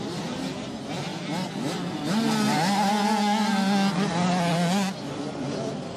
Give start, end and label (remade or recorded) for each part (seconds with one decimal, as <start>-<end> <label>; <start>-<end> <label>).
0.0-6.0 recorded